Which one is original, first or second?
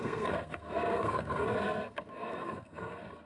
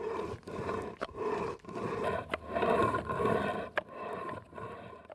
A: second